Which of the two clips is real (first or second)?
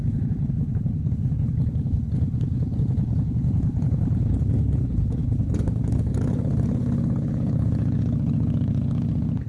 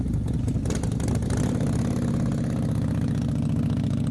second